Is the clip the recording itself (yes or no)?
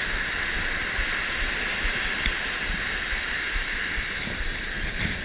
yes